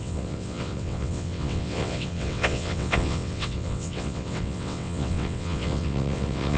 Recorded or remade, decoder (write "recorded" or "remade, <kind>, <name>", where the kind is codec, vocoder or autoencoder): remade, vocoder, WaveNeXt